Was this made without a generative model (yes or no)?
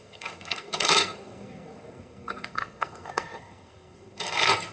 no